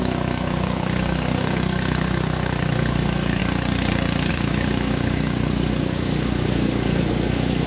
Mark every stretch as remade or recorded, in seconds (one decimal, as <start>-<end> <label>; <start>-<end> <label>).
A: 0.0-3.4 remade; 3.4-4.3 recorded; 4.3-7.7 remade